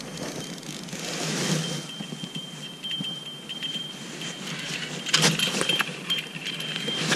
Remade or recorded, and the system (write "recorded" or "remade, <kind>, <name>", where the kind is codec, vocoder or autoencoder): recorded